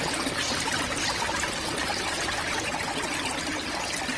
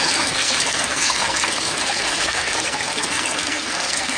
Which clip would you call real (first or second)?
first